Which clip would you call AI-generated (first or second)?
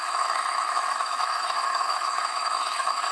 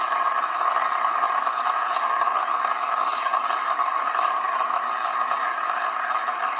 first